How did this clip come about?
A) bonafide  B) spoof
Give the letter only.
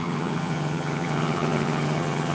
B